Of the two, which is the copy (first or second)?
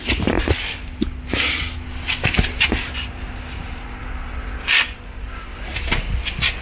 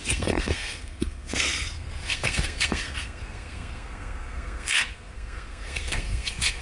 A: second